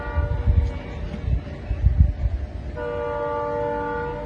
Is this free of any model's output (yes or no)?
yes